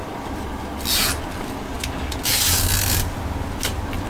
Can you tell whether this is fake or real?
real